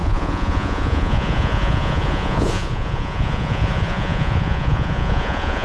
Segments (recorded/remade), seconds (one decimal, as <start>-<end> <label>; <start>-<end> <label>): 0.0-5.6 remade